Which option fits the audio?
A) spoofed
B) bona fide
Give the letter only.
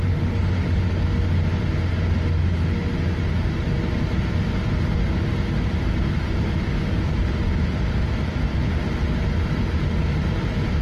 B